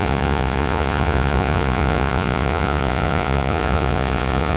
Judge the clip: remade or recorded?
remade